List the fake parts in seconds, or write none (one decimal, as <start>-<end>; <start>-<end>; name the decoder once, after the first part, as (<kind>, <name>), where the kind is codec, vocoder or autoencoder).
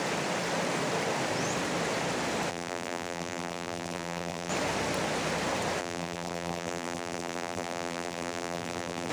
2.5-4.5 (vocoder, BigVGAN v2); 5.8-9.1